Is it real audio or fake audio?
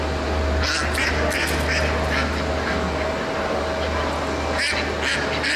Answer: real